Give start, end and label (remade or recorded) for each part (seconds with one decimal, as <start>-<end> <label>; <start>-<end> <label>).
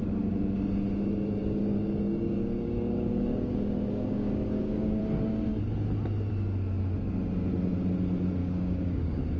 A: 0.0-1.4 recorded; 1.4-5.0 remade; 5.0-8.4 recorded; 8.4-9.4 remade